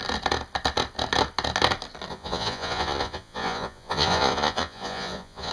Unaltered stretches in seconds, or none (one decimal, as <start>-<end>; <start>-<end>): 0.0-2.1